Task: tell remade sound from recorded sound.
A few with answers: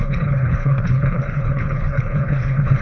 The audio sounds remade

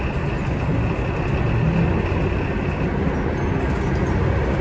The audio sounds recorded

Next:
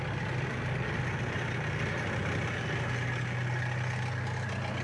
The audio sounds recorded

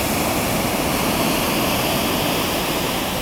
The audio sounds recorded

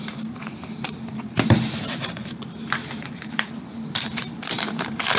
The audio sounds remade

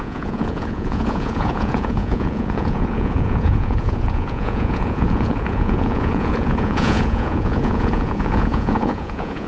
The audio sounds remade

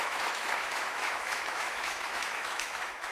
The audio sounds remade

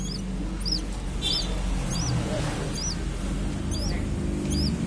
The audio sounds recorded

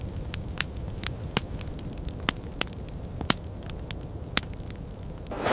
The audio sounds recorded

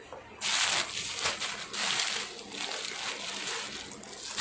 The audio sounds recorded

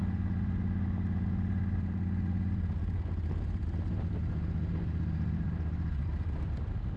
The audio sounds recorded